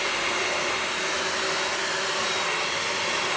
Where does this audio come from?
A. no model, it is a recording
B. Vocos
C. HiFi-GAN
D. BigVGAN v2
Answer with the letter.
A